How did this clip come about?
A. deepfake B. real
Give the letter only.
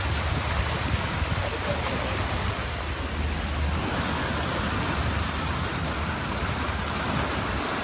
B